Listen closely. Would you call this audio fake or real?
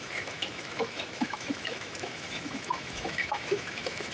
fake